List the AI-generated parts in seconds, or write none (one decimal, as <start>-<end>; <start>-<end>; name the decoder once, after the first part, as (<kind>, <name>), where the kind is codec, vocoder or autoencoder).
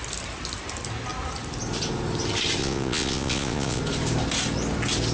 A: 2.6-3.8 (vocoder, Vocos)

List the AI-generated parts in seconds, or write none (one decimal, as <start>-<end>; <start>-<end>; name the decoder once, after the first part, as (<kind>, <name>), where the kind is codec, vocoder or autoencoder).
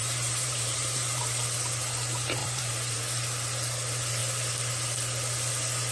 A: 0.0-1.2 (vocoder, BigVGAN v2); 2.4-3.0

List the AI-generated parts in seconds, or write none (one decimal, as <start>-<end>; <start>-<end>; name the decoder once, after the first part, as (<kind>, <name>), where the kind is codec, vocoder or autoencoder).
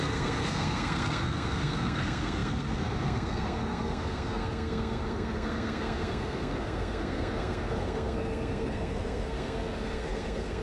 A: 0.0-10.6 (codec, SNAC)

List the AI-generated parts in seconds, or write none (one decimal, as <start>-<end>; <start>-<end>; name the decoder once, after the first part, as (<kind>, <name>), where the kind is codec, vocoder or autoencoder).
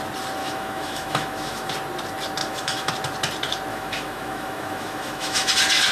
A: 0.4-1.7 (autoencoder, DAC-VAE); 2.4-2.9; 3.7-5.5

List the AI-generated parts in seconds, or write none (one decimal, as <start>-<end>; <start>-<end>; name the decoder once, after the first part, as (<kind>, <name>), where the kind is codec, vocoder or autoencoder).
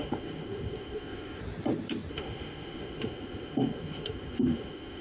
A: 0.0-1.4 (autoencoder, DAC-VAE); 2.1-5.0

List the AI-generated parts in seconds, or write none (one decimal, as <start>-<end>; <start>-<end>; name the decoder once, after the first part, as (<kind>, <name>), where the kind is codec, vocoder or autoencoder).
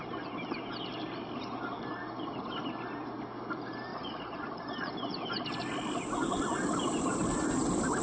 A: 3.9-4.9 (vocoder, Vocos)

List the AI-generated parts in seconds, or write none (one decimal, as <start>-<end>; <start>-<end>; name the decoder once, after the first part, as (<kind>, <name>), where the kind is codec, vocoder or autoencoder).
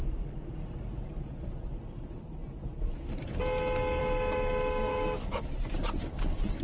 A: 4.9-5.5 (autoencoder, DAC-VAE)